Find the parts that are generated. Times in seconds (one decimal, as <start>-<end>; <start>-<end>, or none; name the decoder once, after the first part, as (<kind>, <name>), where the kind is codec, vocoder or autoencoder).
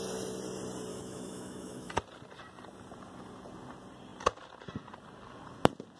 0.9-1.9 (autoencoder, DAC-VAE)